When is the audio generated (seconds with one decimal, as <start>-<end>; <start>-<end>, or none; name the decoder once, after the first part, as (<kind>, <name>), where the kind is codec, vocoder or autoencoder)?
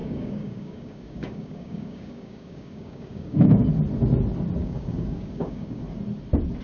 0.0-3.7 (codec, DAC); 4.6-5.8